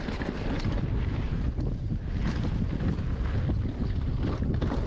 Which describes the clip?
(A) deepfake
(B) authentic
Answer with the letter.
B